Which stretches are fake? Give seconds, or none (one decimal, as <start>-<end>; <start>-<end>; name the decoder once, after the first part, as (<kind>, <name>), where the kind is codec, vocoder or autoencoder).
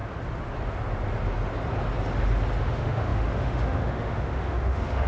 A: 2.6-5.1 (autoencoder, DAC-VAE)